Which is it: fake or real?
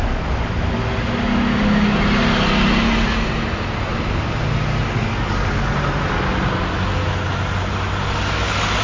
real